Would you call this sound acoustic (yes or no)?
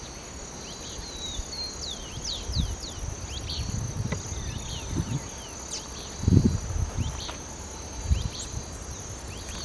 yes